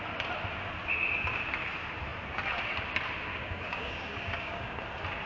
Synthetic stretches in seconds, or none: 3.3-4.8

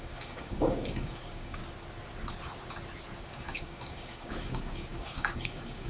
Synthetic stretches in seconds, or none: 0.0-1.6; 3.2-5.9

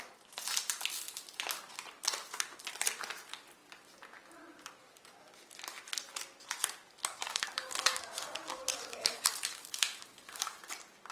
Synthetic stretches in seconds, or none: 7.0-10.6

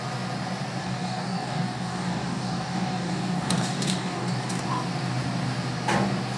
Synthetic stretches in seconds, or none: 0.8-4.6

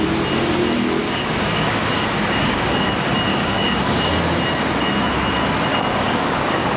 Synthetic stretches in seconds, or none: 1.0-2.8; 3.3-4.1; 5.7-6.8

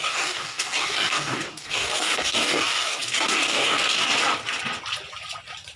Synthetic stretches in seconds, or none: 0.0-4.1

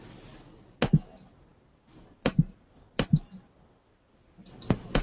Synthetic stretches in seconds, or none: none

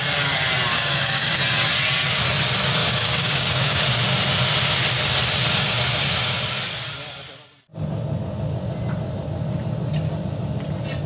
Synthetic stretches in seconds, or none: 0.7-1.4; 2.8-3.8